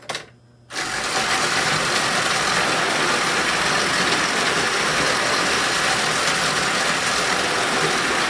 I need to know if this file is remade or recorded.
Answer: recorded